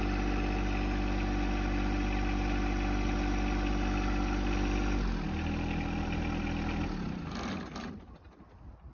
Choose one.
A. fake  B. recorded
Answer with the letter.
B